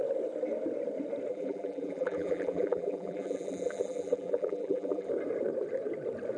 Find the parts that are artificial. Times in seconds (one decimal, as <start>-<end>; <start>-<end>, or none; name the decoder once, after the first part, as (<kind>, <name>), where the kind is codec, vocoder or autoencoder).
1.3-5.1 (vocoder, BigVGAN v2)